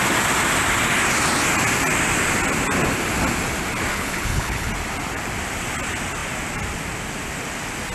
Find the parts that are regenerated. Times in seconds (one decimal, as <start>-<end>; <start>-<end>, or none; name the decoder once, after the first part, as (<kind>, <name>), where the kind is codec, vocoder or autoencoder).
3.9-4.7 (codec, HILCodec)